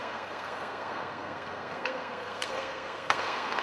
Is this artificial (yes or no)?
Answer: yes